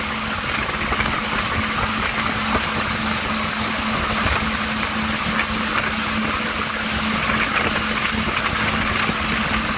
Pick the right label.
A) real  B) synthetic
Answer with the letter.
A